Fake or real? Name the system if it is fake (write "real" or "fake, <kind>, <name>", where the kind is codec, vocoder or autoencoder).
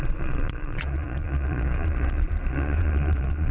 fake, vocoder, Vocos